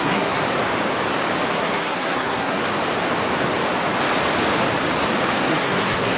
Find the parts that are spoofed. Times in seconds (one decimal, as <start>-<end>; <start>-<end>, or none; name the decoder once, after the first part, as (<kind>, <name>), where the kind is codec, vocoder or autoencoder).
0.0-0.4 (codec, SNAC); 1.5-2.6; 5.4-6.2